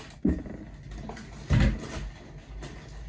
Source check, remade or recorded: recorded